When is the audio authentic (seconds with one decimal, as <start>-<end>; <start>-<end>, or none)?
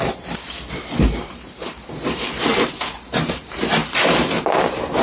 3.8-4.6